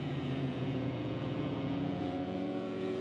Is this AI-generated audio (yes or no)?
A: yes